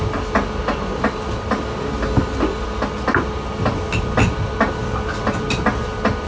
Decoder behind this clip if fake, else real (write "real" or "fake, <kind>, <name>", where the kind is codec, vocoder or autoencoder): real